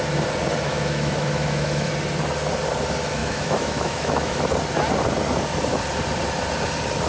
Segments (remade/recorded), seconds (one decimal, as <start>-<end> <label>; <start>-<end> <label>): 0.0-0.7 recorded; 0.7-1.9 remade; 1.9-3.2 recorded; 3.2-4.4 remade; 4.4-7.1 recorded